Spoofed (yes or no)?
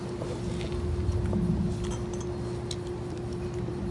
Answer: no